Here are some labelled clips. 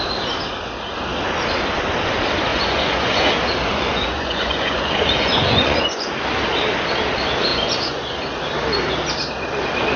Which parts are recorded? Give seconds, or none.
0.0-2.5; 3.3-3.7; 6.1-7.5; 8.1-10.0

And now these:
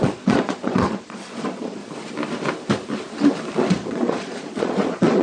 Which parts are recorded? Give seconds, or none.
1.8-3.7

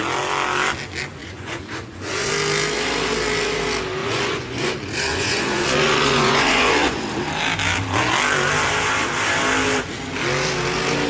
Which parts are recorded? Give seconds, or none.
0.0-1.2; 2.3-4.0; 7.1-11.1

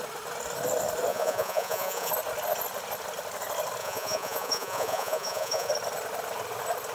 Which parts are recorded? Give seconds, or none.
0.0-1.1; 2.1-3.8; 5.7-6.9

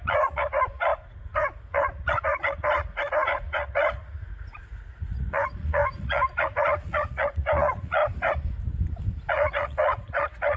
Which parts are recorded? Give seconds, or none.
8.0-9.3